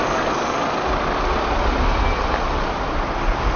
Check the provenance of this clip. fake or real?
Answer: real